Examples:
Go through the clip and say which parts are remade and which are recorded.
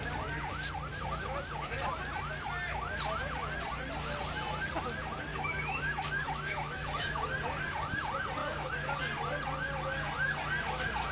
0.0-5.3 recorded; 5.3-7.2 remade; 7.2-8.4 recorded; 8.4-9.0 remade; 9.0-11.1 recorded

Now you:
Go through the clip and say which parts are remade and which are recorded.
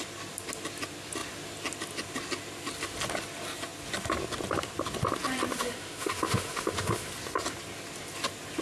0.0-5.5 recorded; 5.5-7.1 remade; 7.1-8.6 recorded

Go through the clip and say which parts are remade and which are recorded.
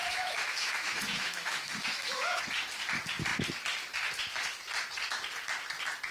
0.0-2.4 remade; 2.4-6.1 recorded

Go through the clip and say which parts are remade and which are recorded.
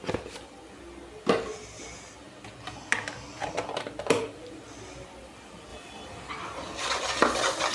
0.0-7.7 recorded